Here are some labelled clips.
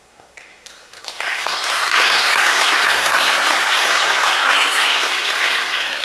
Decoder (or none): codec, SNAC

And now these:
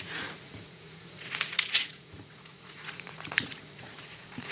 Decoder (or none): vocoder, Vocos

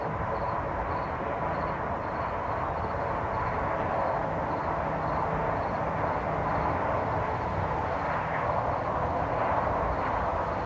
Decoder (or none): none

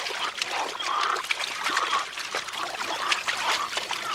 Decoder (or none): none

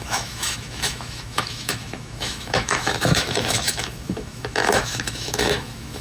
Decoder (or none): autoencoder, DAC-VAE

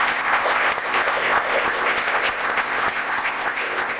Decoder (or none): codec, ZipCodec